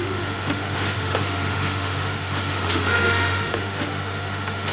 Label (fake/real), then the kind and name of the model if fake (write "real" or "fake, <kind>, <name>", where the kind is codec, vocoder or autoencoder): fake, autoencoder, DAC-VAE